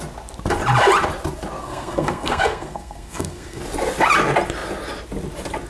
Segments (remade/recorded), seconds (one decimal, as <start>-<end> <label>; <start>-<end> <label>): 0.0-1.6 recorded; 1.6-3.6 remade; 3.6-5.7 recorded